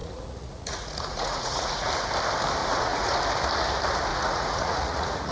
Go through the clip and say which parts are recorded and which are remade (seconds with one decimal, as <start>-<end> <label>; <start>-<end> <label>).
0.0-1.9 remade; 1.9-2.6 recorded; 2.6-3.2 remade; 3.2-4.1 recorded; 4.1-5.3 remade